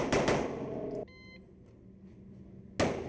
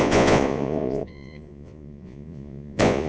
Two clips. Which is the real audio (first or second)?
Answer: first